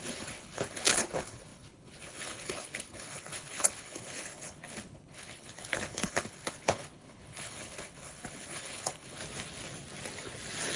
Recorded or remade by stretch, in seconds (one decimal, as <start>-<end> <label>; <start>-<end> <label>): 0.0-9.2 remade; 9.2-10.8 recorded